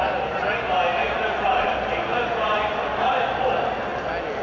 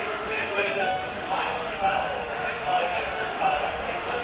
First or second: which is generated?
second